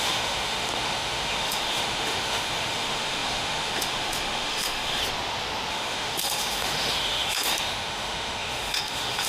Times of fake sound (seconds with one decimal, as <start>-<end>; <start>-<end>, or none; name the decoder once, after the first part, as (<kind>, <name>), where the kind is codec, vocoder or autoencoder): 0.0-5.0 (autoencoder, DAC-VAE); 5.7-9.3